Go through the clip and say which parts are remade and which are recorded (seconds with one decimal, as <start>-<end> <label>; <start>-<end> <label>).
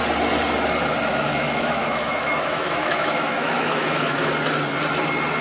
0.0-1.1 recorded; 1.1-4.3 remade; 4.3-5.4 recorded